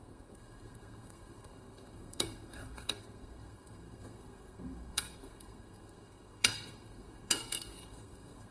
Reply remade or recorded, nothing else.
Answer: remade